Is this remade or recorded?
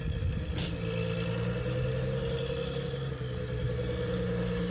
recorded